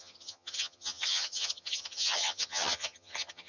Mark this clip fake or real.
fake